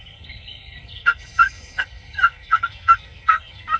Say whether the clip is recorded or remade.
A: remade